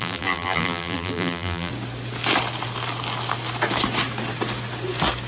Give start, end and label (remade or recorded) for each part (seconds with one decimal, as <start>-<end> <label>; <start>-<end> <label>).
0.0-1.7 remade; 1.7-5.3 recorded